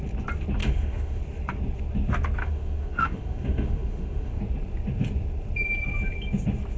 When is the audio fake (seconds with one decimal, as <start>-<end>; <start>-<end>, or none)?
0.6-1.2; 2.4-4.4